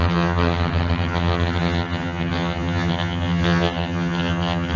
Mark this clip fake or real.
fake